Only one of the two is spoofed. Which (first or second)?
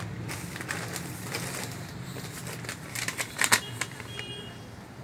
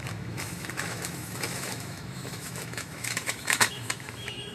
second